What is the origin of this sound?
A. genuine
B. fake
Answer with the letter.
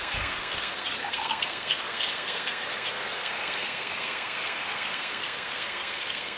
B